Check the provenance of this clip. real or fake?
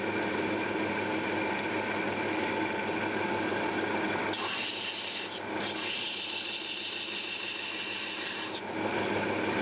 real